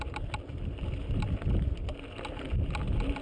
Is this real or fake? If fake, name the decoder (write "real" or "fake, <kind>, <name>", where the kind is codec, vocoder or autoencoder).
real